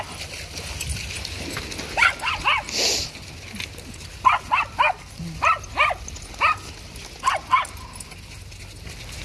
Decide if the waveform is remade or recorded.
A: recorded